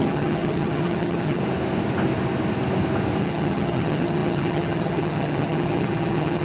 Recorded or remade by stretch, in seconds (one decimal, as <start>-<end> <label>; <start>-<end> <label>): 0.0-1.4 remade; 1.4-3.2 recorded; 3.2-6.4 remade